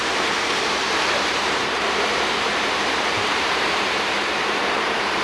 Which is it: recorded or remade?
remade